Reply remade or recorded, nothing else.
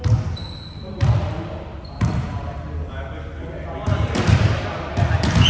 recorded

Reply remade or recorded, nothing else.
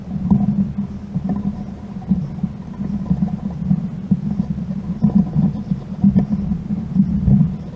recorded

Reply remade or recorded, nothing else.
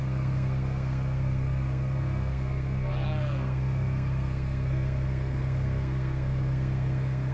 remade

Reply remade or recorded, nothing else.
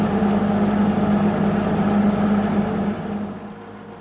recorded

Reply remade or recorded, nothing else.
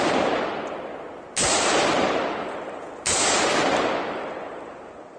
remade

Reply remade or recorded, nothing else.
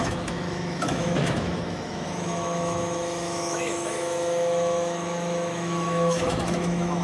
remade